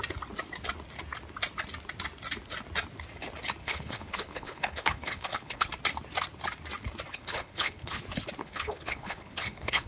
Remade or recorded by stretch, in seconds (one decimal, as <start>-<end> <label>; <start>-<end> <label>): 0.0-3.6 recorded; 3.6-5.7 remade; 5.7-7.1 recorded; 7.1-8.0 remade; 8.0-8.4 recorded; 8.4-9.9 remade